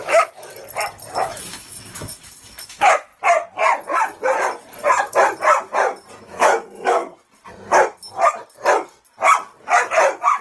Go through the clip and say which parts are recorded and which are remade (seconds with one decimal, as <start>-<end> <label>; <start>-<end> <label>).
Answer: 0.0-0.6 remade; 0.6-1.2 recorded; 1.2-3.1 remade; 3.1-6.2 recorded; 6.2-7.0 remade; 7.0-10.4 recorded